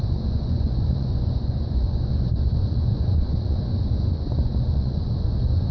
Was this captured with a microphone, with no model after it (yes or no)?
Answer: no